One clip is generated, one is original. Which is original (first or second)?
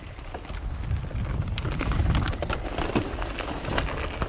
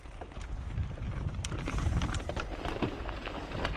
first